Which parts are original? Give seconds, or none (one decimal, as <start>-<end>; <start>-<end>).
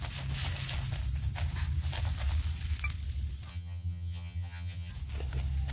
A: 0.0-3.5; 4.9-5.7